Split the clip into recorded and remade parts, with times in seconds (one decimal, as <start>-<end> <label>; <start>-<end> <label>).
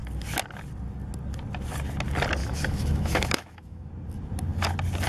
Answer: 0.0-2.4 recorded; 2.4-3.9 remade; 3.9-5.1 recorded